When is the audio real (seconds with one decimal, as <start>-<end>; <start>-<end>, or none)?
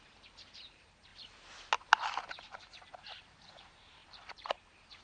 1.1-2.3